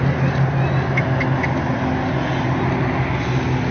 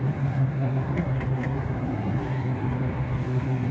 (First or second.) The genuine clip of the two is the first